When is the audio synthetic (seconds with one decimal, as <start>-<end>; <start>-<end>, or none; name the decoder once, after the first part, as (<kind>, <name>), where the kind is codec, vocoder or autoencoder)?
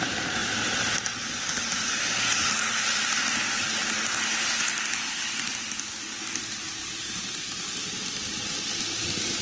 none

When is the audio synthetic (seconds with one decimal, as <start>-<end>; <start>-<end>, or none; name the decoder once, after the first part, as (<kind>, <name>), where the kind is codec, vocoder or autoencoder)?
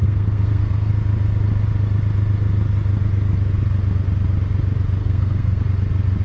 0.0-0.9 (codec, SNAC); 5.0-5.6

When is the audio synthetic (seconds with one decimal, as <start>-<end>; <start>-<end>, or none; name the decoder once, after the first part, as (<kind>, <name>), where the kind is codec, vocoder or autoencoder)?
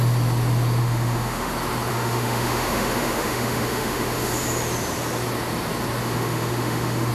0.8-1.5 (autoencoder, DAC-VAE); 1.9-4.3; 6.0-7.1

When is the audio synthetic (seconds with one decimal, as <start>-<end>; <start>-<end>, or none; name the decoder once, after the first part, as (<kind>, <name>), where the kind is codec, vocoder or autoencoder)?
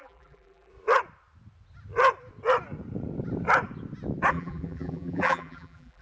0.0-0.7 (vocoder, BigVGAN v2); 4.3-6.0